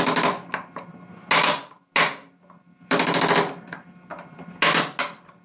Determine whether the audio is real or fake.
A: real